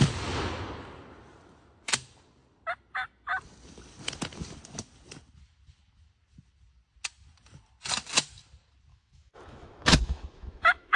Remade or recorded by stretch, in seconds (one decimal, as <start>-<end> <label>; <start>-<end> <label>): 0.0-8.9 recorded; 8.9-11.0 remade